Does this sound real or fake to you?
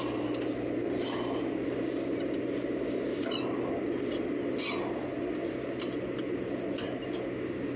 real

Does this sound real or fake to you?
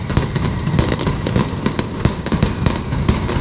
real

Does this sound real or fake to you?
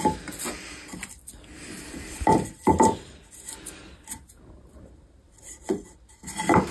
real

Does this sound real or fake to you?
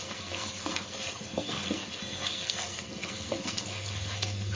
fake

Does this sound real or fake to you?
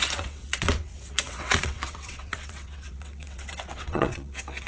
fake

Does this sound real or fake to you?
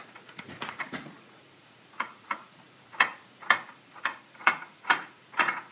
fake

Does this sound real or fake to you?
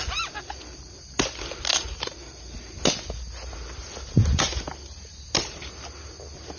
real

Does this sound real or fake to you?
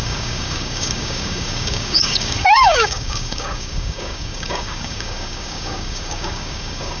fake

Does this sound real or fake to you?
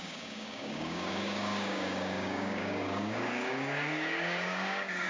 fake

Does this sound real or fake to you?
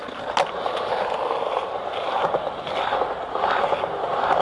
real